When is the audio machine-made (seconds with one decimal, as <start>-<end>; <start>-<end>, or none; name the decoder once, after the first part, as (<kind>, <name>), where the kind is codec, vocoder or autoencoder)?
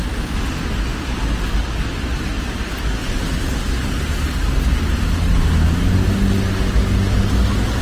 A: none